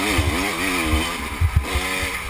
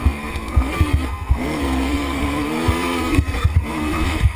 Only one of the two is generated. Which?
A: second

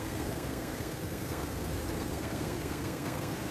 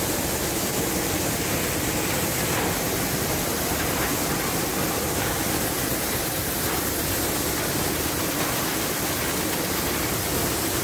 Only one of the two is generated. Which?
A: first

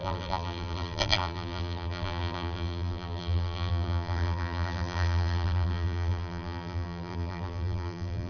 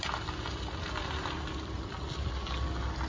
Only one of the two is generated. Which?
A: first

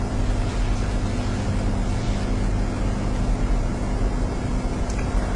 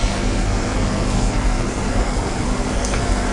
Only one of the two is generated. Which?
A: second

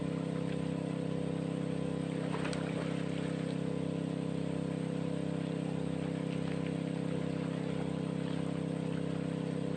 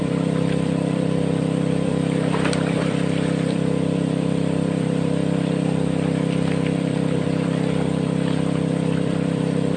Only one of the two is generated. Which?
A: second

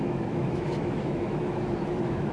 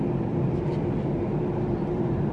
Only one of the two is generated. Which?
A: first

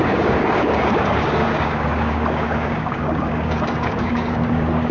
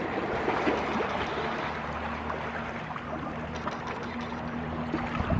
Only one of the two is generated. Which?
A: first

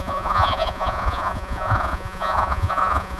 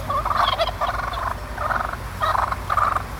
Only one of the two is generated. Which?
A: first